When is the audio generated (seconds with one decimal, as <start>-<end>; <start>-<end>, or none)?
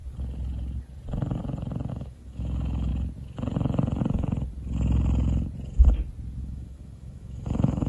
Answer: 1.9-2.9; 6.4-7.9